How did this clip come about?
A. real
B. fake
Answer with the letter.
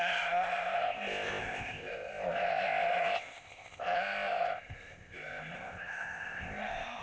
B